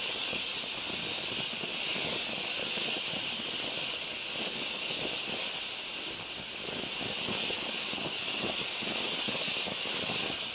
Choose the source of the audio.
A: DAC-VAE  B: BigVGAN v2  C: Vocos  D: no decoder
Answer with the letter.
D